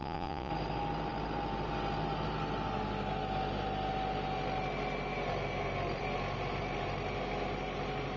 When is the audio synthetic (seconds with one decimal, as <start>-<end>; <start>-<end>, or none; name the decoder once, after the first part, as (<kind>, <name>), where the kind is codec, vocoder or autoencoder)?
0.0-0.5 (vocoder, Vocos)